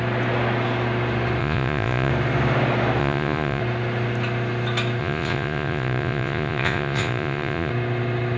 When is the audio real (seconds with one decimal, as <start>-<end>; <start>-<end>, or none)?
0.0-1.4; 2.1-3.0; 3.6-5.0; 7.7-8.4